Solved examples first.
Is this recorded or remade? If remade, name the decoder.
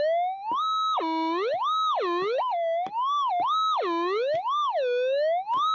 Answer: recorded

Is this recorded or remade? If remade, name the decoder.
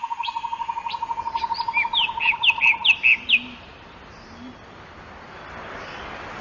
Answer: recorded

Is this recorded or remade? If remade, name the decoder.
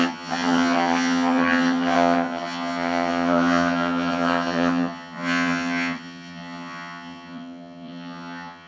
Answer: remade, vocoder, HiFi-GAN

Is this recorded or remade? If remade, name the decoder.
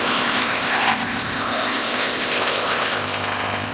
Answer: remade, codec, ZipCodec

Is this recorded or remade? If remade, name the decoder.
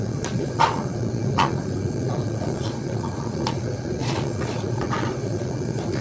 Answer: remade, vocoder, Vocos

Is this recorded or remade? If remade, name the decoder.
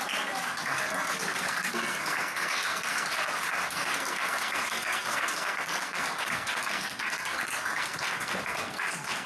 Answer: remade, codec, SNAC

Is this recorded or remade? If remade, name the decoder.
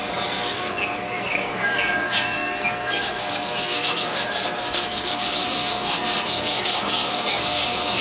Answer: remade, codec, SNAC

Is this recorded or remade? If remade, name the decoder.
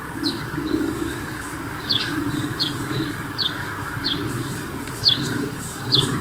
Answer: remade, codec, DAC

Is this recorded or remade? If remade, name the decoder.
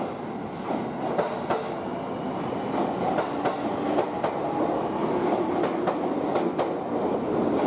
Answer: recorded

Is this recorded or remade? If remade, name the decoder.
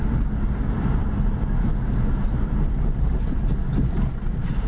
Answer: recorded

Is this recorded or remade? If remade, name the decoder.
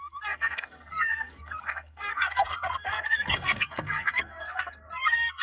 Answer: remade, codec, SNAC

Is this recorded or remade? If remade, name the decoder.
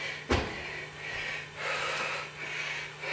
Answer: recorded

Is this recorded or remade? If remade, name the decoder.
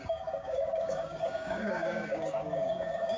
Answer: remade, codec, DAC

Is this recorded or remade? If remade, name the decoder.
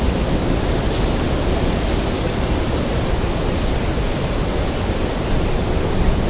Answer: recorded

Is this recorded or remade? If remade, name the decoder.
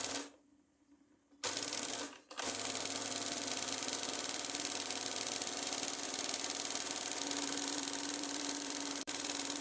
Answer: remade, vocoder, BigVGAN v2